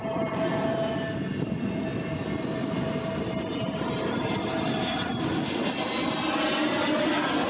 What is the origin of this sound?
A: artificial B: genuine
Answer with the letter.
B